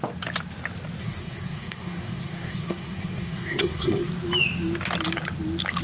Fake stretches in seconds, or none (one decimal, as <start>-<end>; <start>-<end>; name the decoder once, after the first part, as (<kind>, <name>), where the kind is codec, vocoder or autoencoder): 1.0-4.1 (codec, SNAC)